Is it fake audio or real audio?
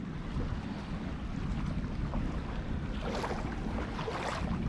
real